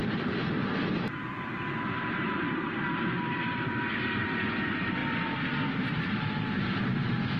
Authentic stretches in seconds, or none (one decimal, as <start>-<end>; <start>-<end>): 5.0-5.7